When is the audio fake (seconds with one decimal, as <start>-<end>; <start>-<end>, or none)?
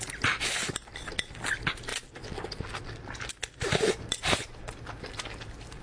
none